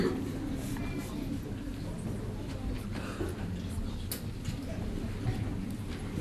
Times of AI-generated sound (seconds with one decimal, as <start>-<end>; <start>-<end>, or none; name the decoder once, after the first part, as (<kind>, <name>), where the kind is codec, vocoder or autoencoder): none